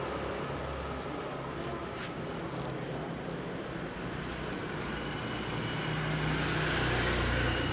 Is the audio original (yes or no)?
yes